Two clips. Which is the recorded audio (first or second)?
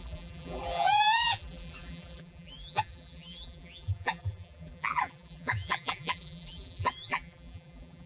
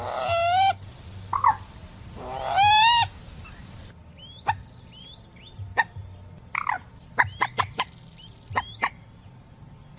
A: second